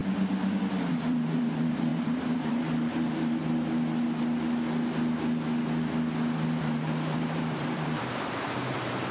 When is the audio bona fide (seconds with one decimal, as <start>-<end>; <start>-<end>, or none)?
0.0-0.9; 3.4-6.6